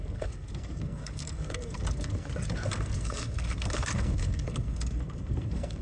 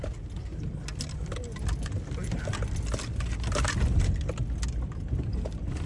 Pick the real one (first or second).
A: second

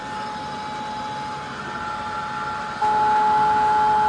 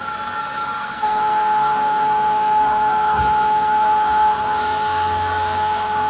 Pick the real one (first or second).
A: first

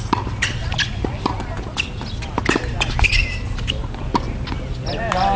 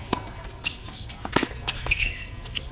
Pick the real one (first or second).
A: first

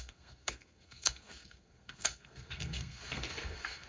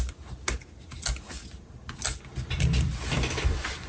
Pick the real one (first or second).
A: second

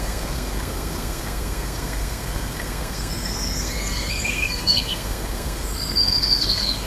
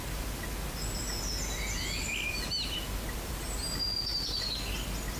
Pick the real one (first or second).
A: second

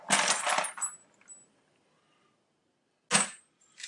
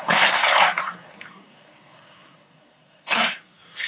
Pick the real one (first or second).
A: first